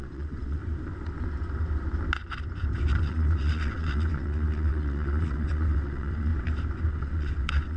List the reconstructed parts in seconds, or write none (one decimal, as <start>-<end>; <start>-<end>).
0.0-0.6; 3.0-6.3; 6.9-7.8